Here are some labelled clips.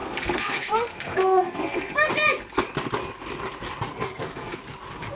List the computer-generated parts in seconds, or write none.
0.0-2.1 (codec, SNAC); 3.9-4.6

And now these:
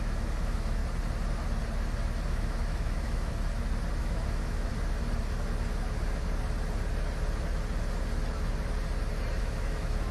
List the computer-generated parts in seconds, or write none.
0.0-0.8 (autoencoder, DAC-VAE); 2.3-3.3; 4.0-4.7; 9.4-10.1

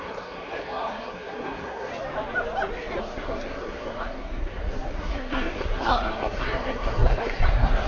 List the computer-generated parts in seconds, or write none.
0.0-1.9 (codec, SNAC); 3.0-7.9

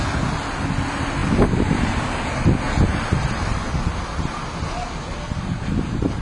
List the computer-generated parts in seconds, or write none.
none

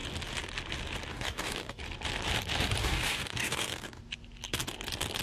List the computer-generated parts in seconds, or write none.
1.1-1.8 (codec, DAC); 2.8-4.0